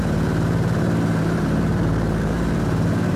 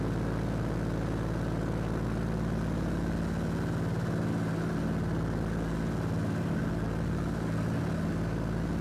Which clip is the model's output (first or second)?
first